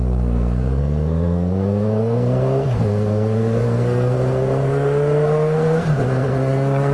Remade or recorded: remade